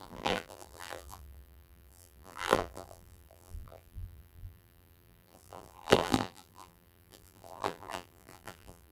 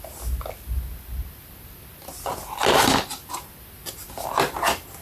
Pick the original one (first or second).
second